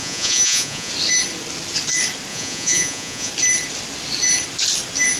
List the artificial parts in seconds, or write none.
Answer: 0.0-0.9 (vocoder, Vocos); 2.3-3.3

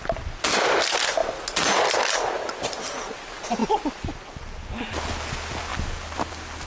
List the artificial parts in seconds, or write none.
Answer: none

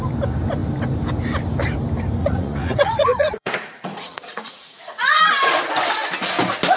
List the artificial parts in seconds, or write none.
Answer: 2.2-5.2 (vocoder, Vocos)

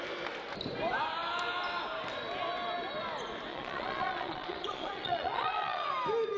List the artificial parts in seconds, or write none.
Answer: 3.5-5.9 (vocoder, Vocos)